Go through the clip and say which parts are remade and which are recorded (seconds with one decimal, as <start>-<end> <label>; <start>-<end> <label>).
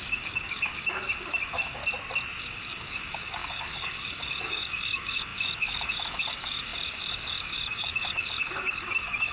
0.0-1.8 remade; 1.8-2.4 recorded; 2.4-9.3 remade